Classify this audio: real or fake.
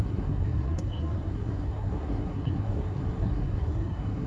fake